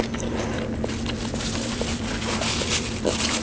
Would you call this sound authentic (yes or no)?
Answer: yes